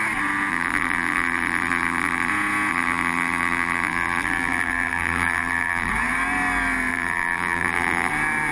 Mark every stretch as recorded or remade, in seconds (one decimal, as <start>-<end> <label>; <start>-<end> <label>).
0.0-0.5 recorded; 0.5-2.3 remade; 2.3-2.7 recorded; 2.7-5.9 remade; 5.9-6.9 recorded; 6.9-8.1 remade; 8.1-8.5 recorded